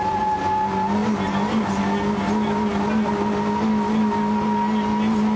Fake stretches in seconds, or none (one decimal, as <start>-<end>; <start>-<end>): none